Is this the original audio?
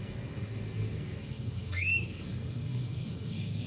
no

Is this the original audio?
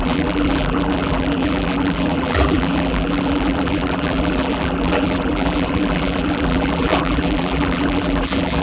no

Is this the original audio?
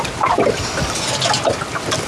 yes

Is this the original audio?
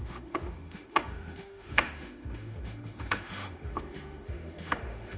no